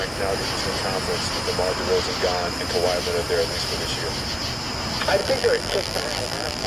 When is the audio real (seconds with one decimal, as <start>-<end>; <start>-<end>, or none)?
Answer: 0.0-5.2